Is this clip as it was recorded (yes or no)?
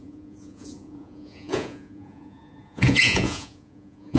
no